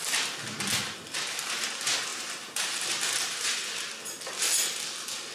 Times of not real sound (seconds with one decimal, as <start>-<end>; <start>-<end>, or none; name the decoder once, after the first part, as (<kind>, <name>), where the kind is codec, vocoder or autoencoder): 2.1-3.9 (vocoder, BigVGAN v2)